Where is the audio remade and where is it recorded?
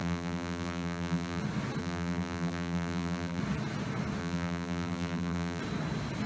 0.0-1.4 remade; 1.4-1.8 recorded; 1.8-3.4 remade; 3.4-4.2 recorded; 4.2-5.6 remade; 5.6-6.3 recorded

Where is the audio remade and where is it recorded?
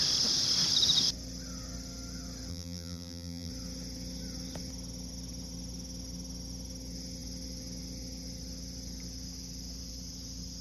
0.0-2.5 recorded; 2.5-3.5 remade; 3.5-10.6 recorded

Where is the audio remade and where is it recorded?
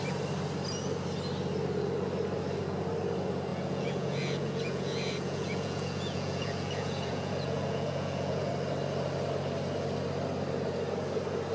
0.0-3.5 recorded; 3.5-8.5 remade; 8.5-11.5 recorded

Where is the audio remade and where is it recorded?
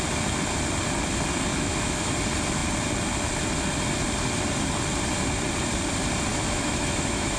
0.0-1.5 recorded; 1.5-2.1 remade; 2.1-6.3 recorded; 6.3-7.4 remade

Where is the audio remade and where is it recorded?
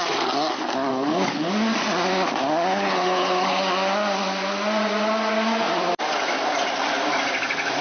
0.0-0.9 recorded; 0.9-1.5 remade; 1.5-2.7 recorded; 2.7-3.6 remade; 3.6-7.8 recorded